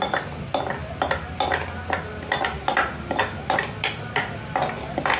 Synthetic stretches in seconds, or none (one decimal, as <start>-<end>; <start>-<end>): none